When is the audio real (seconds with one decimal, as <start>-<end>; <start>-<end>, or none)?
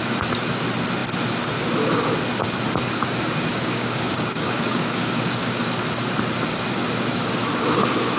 0.0-3.5; 5.6-8.2